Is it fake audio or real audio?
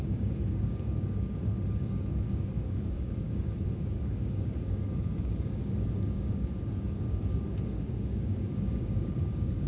fake